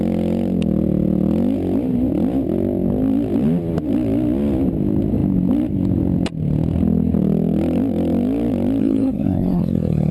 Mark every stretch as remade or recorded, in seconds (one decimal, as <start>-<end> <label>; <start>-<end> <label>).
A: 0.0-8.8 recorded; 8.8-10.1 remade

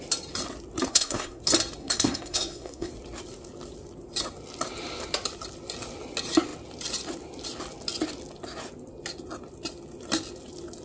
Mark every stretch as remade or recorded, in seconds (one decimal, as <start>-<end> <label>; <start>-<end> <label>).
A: 0.0-0.9 recorded; 0.9-1.4 remade; 1.4-1.8 recorded; 1.8-2.9 remade; 2.9-10.8 recorded

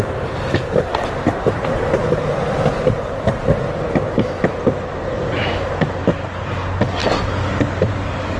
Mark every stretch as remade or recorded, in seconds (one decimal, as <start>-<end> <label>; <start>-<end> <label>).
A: 0.0-8.4 recorded